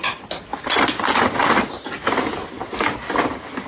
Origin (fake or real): real